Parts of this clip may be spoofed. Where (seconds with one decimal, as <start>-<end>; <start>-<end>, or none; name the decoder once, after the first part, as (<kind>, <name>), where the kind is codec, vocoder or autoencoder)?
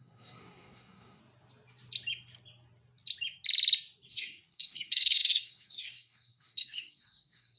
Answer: 0.0-1.2 (codec, SNAC); 4.1-7.6